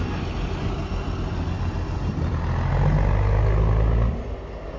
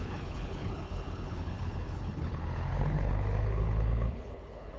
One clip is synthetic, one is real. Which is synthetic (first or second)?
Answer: second